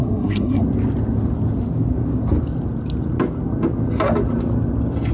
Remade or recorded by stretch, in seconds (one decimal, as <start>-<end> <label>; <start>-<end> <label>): 0.0-0.6 remade; 0.6-5.1 recorded